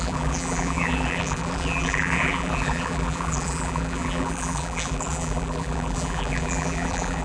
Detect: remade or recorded remade